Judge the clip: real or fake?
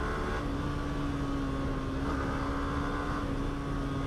real